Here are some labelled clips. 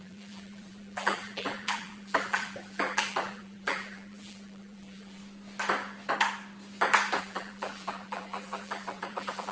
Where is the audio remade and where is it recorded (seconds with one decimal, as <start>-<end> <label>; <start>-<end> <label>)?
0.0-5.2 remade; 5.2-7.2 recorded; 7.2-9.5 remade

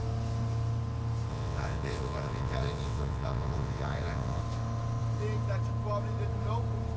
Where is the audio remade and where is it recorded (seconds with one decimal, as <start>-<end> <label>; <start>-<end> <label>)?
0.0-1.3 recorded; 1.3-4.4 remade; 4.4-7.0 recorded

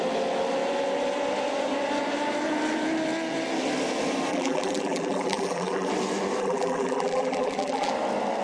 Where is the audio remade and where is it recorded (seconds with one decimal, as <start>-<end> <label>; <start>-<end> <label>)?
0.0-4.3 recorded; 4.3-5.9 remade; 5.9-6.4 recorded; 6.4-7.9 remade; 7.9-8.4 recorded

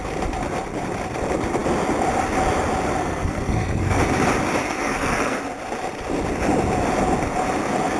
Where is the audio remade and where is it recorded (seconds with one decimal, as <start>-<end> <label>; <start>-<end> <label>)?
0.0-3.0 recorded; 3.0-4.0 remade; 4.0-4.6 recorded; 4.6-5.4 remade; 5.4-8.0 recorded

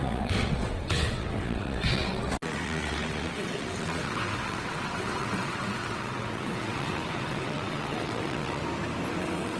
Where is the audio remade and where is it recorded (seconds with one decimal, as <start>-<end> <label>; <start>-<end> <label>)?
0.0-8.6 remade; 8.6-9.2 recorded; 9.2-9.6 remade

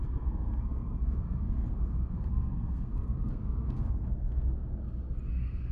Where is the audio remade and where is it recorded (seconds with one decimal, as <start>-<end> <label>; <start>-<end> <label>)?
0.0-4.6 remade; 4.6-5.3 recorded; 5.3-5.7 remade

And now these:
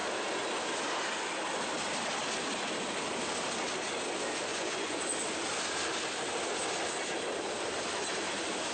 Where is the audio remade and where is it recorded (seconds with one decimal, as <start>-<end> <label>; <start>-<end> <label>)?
0.0-4.5 recorded; 4.5-5.0 remade; 5.0-8.7 recorded

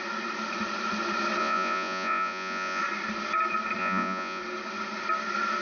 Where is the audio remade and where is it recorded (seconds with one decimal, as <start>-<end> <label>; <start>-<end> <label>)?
0.0-1.4 recorded; 1.4-2.8 remade; 2.8-3.8 recorded; 3.8-4.4 remade; 4.4-5.6 recorded